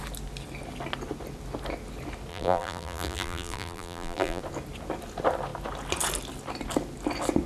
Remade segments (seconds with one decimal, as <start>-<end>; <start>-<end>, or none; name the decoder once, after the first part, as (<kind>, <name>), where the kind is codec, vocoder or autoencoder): 2.3-4.4 (vocoder, BigVGAN v2)